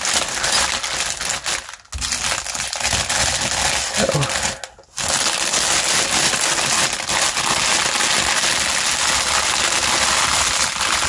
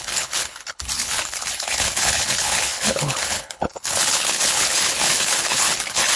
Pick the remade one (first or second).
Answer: second